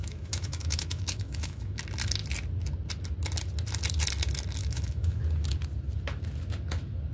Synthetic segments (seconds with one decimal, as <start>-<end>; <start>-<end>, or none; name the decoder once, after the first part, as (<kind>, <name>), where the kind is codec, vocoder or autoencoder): 0.0-1.8 (autoencoder, DAC-VAE); 4.6-5.2